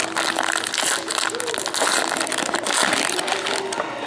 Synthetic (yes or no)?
no